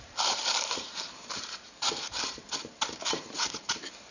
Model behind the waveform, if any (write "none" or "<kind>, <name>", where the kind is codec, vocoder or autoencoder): vocoder, BigVGAN v2